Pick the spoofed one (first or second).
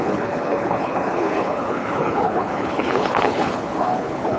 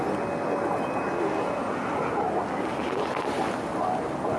first